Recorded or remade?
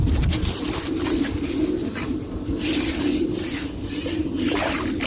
recorded